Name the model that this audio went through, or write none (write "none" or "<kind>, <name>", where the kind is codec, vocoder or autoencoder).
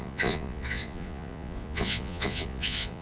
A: vocoder, Vocos